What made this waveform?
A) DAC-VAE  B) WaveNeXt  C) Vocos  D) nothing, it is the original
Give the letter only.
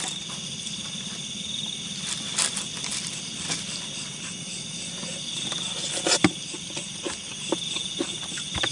D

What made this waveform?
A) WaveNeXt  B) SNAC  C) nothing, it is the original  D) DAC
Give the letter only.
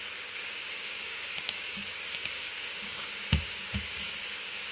D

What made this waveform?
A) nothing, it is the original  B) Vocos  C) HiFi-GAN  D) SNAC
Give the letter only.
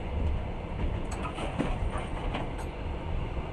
B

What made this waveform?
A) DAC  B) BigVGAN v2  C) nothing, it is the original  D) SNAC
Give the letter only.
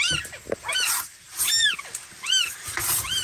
C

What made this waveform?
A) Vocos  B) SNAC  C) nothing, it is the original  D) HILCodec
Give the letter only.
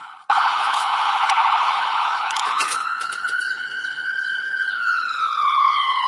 D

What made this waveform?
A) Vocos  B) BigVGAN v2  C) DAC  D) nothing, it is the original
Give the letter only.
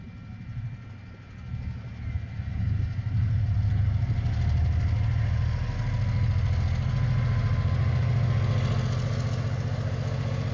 D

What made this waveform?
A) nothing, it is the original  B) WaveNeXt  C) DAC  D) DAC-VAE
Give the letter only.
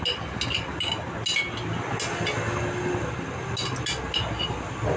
A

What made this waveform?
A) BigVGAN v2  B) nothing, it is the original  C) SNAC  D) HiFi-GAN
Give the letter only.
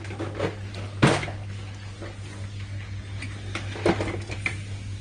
B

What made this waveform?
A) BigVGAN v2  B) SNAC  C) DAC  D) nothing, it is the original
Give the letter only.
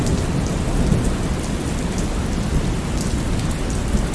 D